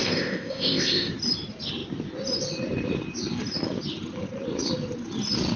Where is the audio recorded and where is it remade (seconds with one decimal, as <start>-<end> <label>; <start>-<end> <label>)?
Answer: 0.0-1.1 remade; 1.1-5.6 recorded